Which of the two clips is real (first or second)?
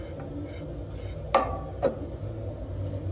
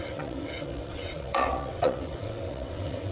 first